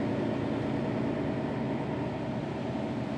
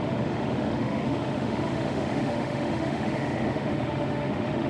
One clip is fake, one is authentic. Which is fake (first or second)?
second